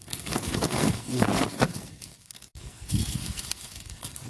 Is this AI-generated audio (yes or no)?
yes